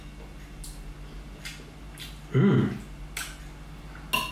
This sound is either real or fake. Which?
real